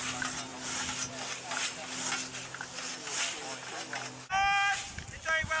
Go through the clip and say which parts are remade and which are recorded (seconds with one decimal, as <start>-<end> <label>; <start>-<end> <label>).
0.0-5.6 recorded